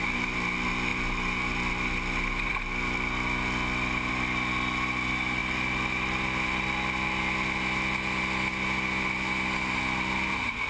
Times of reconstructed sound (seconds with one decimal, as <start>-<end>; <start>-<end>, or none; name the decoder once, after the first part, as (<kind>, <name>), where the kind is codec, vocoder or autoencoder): none